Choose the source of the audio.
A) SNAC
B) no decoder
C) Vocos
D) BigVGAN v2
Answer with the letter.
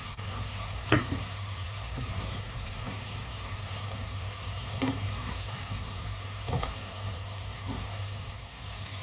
A